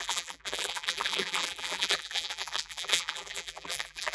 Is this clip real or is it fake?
fake